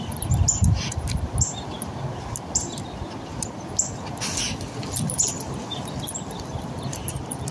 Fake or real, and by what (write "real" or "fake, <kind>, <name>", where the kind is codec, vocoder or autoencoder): real